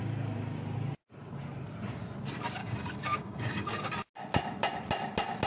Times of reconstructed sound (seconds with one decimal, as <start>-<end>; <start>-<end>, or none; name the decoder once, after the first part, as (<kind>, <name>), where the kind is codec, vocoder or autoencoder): 2.6-3.9 (codec, DAC)